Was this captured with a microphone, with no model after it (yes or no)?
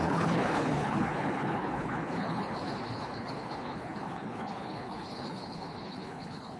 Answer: no